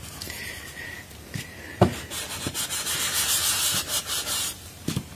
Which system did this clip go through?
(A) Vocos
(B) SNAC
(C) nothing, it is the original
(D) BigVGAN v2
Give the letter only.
D